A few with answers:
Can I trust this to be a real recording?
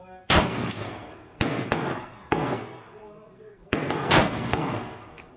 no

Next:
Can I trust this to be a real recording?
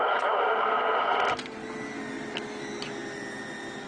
yes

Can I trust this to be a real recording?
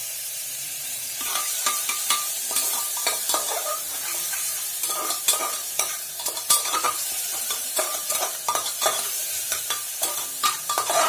no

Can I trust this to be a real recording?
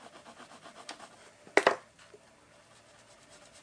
yes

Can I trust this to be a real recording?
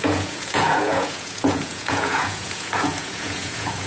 no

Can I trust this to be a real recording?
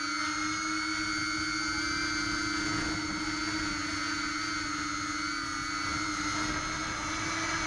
yes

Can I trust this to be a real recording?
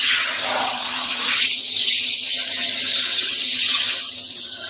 no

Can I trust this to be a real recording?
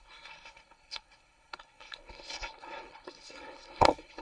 no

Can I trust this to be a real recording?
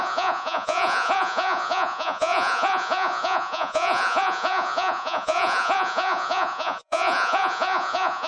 no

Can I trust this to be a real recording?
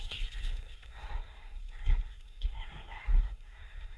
no